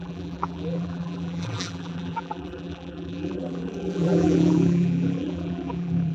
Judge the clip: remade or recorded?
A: remade